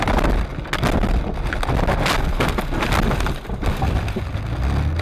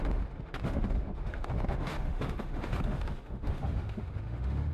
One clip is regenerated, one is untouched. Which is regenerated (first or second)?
second